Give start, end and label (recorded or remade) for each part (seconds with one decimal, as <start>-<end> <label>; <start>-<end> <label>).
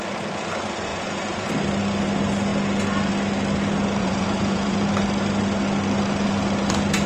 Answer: 0.0-0.9 recorded; 0.9-1.5 remade; 1.5-4.0 recorded; 4.0-4.9 remade; 4.9-7.1 recorded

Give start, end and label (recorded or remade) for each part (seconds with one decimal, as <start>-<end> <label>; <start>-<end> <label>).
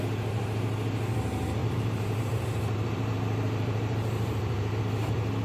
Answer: 0.0-1.6 recorded; 1.6-4.8 remade; 4.8-5.4 recorded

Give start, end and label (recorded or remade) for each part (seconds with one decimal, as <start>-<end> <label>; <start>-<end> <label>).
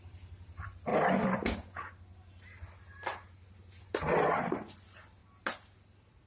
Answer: 0.0-0.9 remade; 0.9-3.8 recorded; 3.8-5.2 remade; 5.2-6.3 recorded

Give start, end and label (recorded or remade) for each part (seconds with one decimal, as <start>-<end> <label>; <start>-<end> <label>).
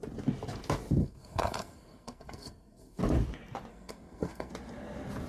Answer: 0.0-1.0 recorded; 1.0-3.0 remade; 3.0-3.7 recorded; 3.7-4.5 remade; 4.5-5.3 recorded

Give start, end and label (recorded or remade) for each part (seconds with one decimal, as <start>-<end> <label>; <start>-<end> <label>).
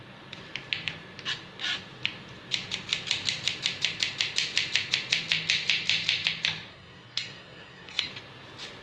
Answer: 0.0-6.7 recorded; 6.7-8.1 remade; 8.1-8.8 recorded